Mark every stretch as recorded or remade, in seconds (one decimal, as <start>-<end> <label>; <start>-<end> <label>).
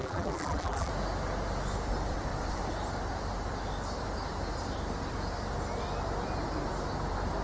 0.0-0.9 remade; 0.9-7.4 recorded